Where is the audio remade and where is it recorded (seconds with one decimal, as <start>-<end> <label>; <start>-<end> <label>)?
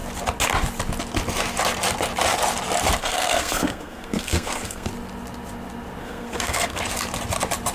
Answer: 0.0-3.0 recorded; 3.0-4.9 remade; 4.9-6.0 recorded; 6.0-6.8 remade; 6.8-7.7 recorded